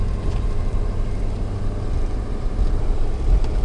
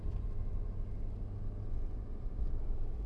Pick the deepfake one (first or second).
first